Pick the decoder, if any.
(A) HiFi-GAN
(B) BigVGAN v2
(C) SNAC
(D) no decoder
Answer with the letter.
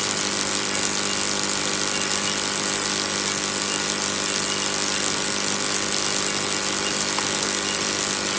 D